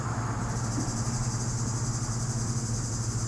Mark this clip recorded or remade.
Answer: recorded